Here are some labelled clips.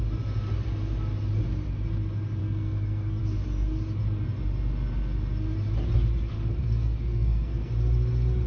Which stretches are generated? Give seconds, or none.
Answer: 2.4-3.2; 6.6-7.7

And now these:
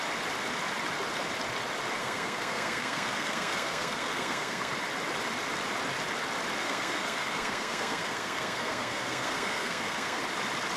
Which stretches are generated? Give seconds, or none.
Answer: 2.0-4.7; 6.6-10.2

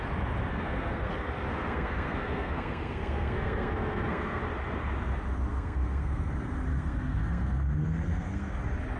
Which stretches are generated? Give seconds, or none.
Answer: 0.5-1.1; 1.5-4.4; 5.5-6.3; 6.7-8.6

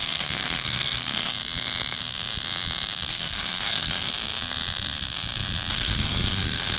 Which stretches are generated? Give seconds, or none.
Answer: 0.0-1.3; 3.1-4.1; 5.7-6.8

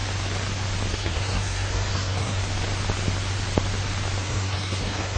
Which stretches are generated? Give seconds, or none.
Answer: 0.9-2.4; 4.2-5.2

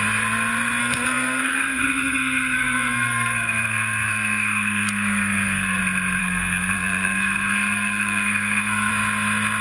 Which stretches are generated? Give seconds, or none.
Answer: 0.8-5.8; 6.2-8.9

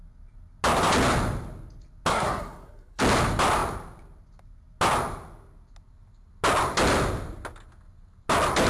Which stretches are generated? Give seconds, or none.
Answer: 2.1-3.0

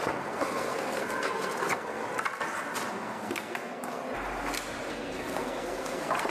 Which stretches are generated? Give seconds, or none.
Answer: 0.0-2.0; 2.9-4.0; 4.9-6.3